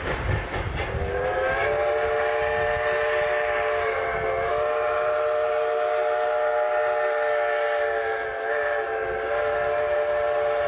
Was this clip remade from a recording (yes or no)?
no